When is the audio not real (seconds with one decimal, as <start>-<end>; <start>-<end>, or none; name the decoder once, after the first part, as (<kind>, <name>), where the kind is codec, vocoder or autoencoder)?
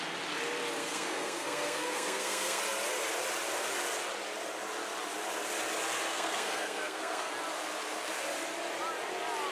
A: 0.8-2.6 (codec, SNAC); 6.1-7.3